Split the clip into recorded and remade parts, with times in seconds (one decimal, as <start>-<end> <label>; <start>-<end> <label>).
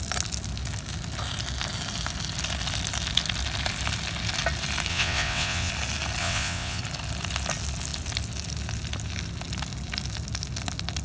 0.0-4.9 recorded; 4.9-5.7 remade; 5.7-6.2 recorded; 6.2-6.8 remade; 6.8-11.0 recorded